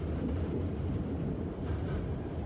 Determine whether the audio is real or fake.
real